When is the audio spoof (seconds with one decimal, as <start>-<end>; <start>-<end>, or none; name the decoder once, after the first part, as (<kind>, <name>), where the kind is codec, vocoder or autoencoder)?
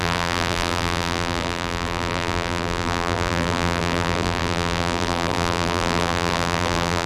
0.0-7.1 (vocoder, BigVGAN v2)